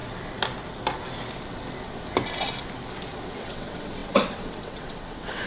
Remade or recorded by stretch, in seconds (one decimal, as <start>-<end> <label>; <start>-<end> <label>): 0.0-3.3 recorded; 3.3-5.5 remade